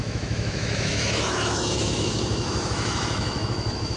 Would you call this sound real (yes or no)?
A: no